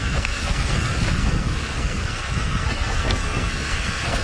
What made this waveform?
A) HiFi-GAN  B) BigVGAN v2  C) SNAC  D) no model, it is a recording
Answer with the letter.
C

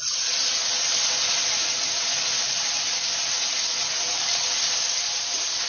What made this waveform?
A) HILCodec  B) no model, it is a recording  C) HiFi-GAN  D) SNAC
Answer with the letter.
B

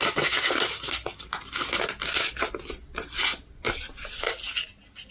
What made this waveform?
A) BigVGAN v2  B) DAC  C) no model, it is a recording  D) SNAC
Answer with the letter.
C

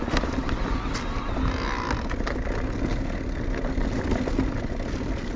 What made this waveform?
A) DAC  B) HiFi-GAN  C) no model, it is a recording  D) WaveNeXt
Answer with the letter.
C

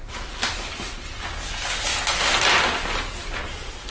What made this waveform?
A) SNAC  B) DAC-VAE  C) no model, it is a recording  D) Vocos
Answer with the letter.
C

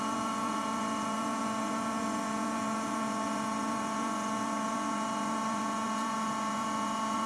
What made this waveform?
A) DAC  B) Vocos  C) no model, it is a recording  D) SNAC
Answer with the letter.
B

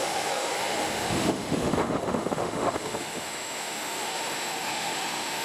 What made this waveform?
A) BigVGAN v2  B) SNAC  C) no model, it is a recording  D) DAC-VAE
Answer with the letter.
D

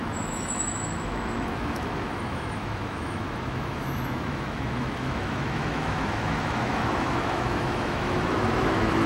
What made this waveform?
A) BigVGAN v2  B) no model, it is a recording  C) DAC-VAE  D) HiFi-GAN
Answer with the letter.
C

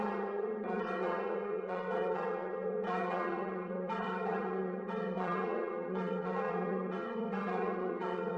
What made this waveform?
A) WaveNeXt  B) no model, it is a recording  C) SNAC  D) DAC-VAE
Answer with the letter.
A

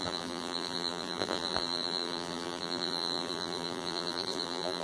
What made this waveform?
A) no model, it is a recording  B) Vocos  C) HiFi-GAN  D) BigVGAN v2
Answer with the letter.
D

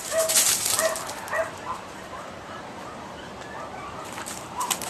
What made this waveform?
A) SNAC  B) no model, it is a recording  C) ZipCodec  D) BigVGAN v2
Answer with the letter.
D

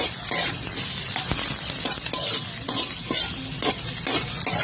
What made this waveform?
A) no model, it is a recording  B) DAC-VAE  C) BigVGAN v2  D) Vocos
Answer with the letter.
A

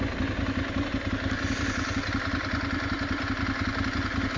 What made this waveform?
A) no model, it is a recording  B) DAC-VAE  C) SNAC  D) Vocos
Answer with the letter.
A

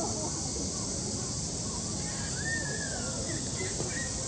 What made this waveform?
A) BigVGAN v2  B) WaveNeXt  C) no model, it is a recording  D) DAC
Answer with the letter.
C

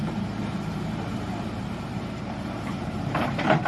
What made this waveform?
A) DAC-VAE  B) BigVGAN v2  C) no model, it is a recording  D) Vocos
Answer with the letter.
B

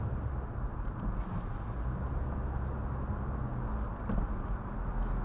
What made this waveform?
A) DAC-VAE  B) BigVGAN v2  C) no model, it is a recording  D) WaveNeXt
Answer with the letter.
C